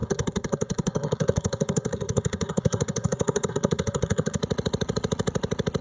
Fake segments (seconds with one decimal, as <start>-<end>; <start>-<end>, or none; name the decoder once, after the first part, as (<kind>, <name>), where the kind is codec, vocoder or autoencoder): 0.0-4.4 (codec, SNAC)